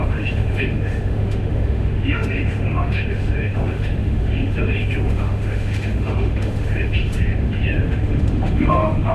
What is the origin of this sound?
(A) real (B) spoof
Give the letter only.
B